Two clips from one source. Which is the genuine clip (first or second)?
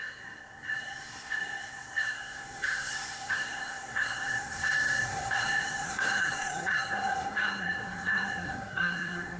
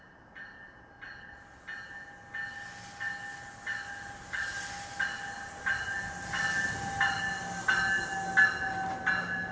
second